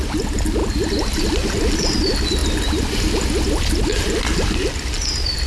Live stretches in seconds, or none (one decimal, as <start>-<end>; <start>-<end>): 0.0-5.5